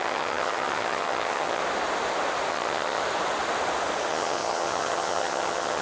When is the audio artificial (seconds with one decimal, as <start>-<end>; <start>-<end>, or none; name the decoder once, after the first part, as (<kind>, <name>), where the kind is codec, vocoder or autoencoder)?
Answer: 0.0-1.6 (vocoder, HiFi-GAN); 2.5-3.0; 4.1-5.8